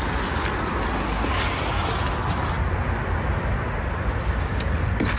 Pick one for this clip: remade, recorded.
recorded